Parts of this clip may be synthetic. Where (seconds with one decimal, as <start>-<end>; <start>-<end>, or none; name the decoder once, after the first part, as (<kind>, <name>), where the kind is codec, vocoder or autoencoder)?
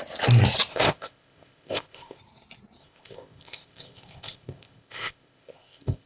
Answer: 0.7-2.2 (codec, ZipCodec); 2.8-6.1